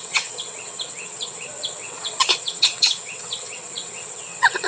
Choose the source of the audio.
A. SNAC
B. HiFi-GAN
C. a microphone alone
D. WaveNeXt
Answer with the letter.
D